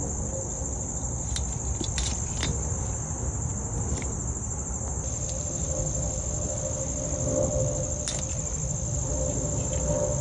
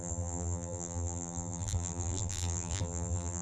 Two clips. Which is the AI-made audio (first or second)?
second